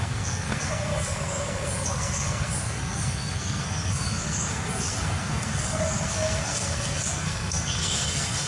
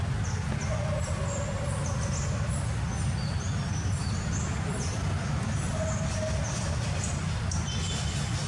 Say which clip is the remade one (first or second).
first